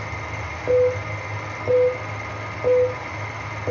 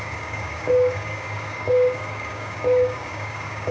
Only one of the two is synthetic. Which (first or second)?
second